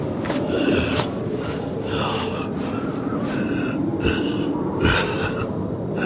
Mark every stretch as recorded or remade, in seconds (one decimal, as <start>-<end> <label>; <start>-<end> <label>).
0.0-6.1 recorded

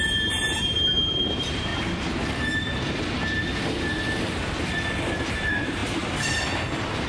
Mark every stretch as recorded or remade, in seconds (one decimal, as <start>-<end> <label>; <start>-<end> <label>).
0.0-1.7 remade; 1.7-5.3 recorded; 5.3-7.1 remade